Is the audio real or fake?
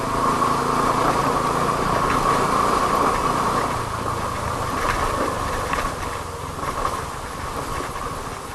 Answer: real